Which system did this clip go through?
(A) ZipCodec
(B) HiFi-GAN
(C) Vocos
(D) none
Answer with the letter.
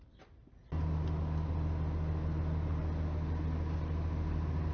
D